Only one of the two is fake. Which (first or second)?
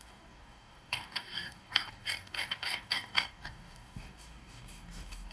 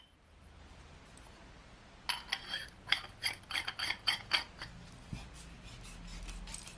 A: first